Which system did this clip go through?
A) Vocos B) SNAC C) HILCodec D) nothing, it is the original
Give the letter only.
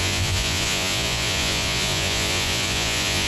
A